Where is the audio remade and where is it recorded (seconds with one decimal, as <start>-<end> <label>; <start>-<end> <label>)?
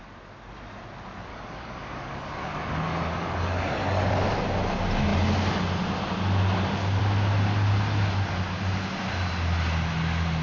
0.0-1.3 recorded; 1.3-4.1 remade; 4.1-10.4 recorded